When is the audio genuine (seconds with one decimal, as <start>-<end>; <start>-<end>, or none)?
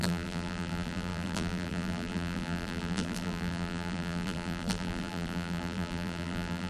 none